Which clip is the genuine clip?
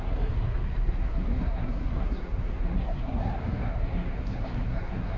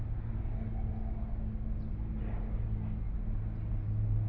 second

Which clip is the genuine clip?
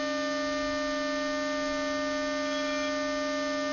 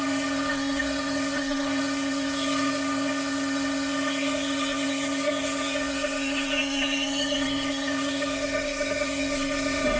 first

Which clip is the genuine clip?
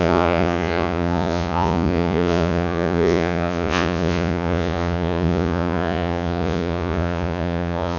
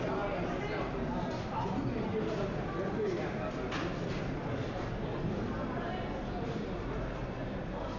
second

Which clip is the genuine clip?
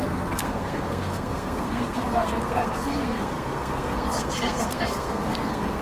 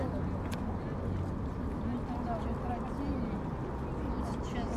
second